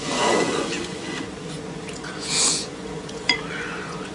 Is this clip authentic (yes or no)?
no